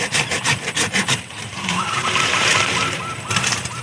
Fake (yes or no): yes